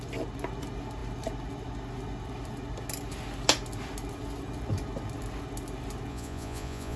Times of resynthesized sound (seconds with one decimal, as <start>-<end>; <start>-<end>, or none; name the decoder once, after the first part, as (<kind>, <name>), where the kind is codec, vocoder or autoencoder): 6.1-7.0 (vocoder, Vocos)